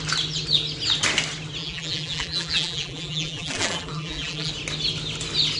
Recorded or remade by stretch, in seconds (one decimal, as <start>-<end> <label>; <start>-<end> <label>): 0.0-1.6 recorded; 1.6-4.5 remade; 4.5-5.6 recorded